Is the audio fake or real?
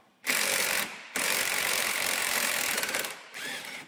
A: fake